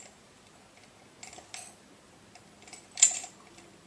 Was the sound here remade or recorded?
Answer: recorded